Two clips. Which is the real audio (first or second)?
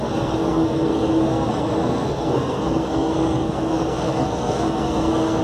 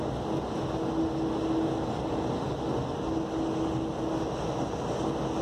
second